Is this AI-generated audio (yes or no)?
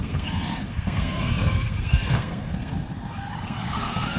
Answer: yes